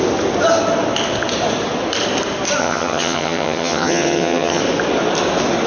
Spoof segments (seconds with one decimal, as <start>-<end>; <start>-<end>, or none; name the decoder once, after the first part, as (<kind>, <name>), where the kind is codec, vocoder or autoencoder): 2.6-4.6 (vocoder, HiFi-GAN)